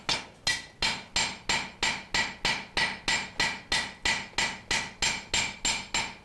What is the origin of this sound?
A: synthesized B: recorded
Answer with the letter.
B